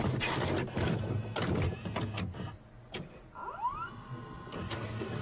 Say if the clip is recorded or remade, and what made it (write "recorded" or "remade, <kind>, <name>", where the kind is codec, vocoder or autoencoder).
recorded